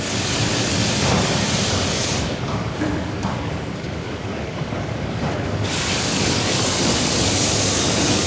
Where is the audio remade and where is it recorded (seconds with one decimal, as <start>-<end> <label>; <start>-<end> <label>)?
0.0-0.8 remade; 0.8-1.7 recorded; 1.7-8.3 remade